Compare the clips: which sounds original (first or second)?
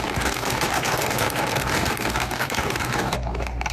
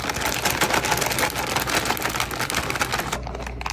second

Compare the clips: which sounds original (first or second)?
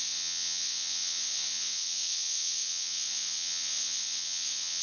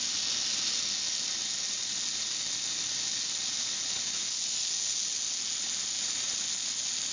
second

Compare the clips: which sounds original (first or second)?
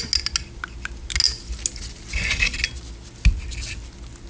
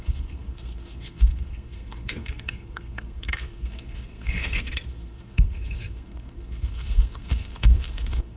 first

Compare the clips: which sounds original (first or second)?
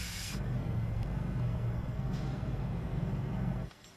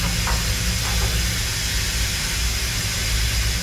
second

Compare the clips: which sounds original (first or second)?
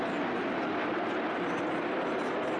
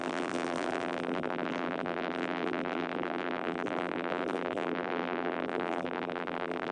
first